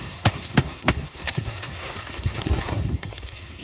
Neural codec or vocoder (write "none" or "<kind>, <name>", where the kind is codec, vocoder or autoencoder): codec, SNAC